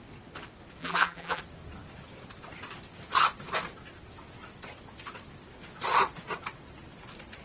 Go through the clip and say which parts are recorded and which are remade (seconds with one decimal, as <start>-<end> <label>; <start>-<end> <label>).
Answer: 0.0-0.8 recorded; 0.8-1.4 remade; 1.4-7.4 recorded